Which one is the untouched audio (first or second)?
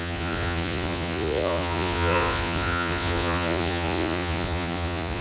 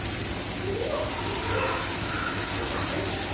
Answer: second